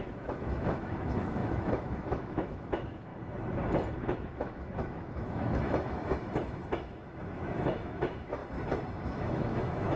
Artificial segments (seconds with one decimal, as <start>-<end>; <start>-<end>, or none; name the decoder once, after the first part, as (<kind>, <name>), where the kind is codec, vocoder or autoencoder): 0.0-3.1 (autoencoder, DAC-VAE); 4.0-8.4; 9.0-10.0